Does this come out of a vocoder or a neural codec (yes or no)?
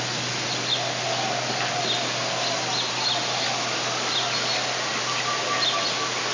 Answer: no